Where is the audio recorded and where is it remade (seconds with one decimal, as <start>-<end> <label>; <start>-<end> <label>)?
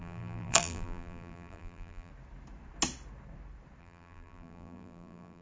0.0-2.1 remade; 2.1-3.8 recorded; 3.8-5.4 remade